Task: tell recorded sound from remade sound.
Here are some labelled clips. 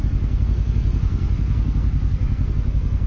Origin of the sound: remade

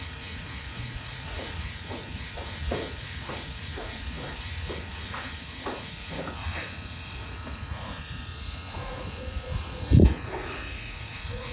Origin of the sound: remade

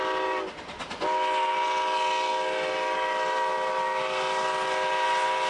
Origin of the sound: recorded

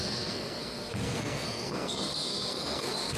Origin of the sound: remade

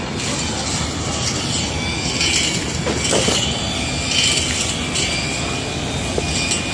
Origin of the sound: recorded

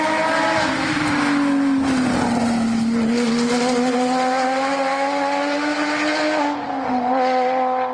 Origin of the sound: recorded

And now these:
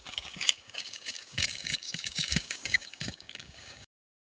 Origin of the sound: remade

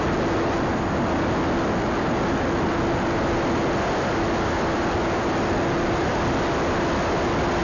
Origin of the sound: recorded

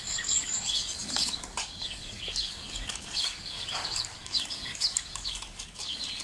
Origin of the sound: remade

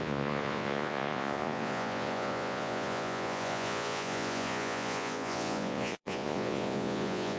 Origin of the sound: remade